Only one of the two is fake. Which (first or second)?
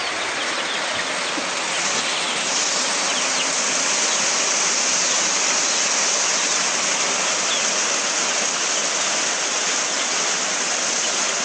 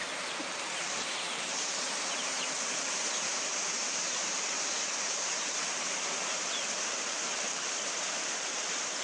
second